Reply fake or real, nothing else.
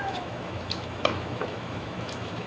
fake